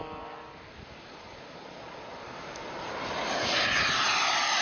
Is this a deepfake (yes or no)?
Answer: no